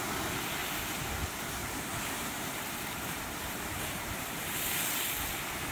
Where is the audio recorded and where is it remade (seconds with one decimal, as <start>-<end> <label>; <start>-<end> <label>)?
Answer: 0.0-1.6 recorded; 1.6-5.0 remade; 5.0-5.7 recorded